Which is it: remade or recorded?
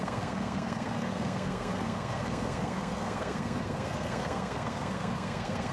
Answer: remade